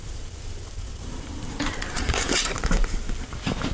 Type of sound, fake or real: fake